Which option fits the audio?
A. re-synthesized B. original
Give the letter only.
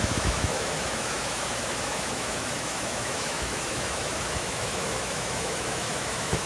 A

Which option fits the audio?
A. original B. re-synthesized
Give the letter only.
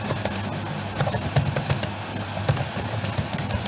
A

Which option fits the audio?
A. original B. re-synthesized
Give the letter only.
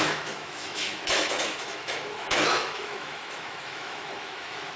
B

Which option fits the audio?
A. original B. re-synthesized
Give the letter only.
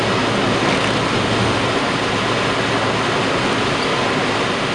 A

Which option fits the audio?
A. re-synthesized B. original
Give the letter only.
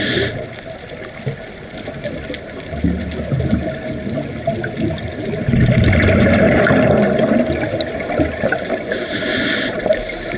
B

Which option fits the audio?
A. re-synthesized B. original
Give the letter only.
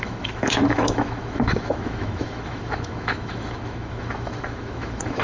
A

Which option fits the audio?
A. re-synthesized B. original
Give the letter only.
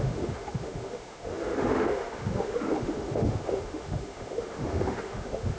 A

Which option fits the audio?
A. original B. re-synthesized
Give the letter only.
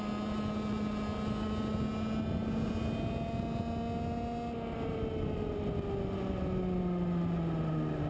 A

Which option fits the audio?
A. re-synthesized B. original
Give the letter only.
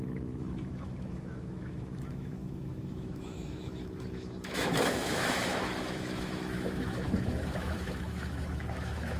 A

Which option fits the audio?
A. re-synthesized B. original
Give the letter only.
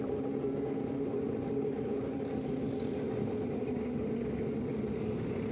B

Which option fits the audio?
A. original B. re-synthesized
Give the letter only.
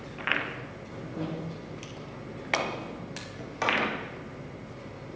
A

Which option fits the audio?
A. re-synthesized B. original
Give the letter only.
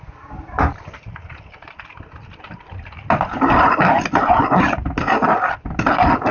B